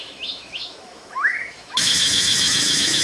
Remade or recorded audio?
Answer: remade